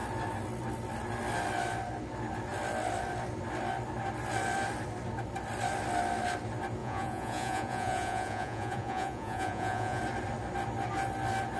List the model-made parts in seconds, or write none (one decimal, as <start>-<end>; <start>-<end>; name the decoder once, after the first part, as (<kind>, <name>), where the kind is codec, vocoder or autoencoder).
6.8-10.0 (vocoder, Vocos)